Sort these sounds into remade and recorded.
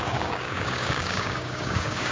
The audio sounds remade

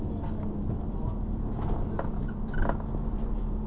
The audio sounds recorded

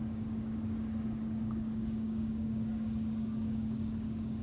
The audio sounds remade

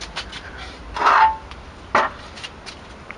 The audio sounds recorded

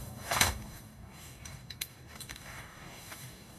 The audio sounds remade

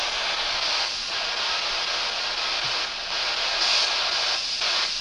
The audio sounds recorded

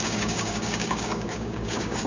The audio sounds remade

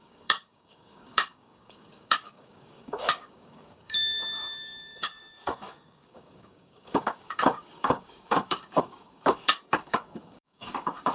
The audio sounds remade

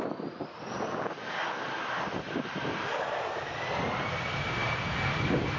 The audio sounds recorded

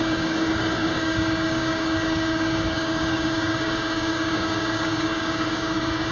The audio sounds remade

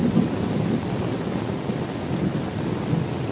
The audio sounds recorded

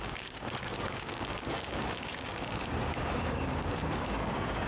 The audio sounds remade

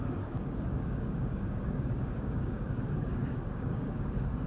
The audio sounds remade